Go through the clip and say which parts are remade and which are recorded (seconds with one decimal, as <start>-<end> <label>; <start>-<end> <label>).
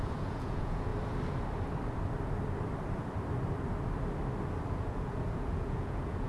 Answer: 0.0-0.9 remade; 0.9-4.7 recorded; 4.7-6.3 remade